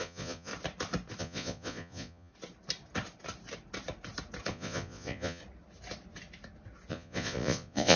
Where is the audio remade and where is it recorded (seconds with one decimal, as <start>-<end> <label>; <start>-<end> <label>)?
0.0-0.5 remade; 0.5-1.2 recorded; 1.2-2.3 remade; 2.3-4.5 recorded; 4.5-5.4 remade; 5.4-6.9 recorded; 6.9-8.0 remade